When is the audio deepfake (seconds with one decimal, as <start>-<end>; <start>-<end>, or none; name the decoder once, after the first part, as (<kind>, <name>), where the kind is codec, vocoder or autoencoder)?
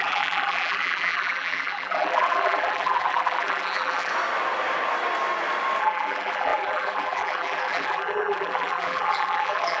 0.0-4.1 (vocoder, BigVGAN v2); 5.8-9.8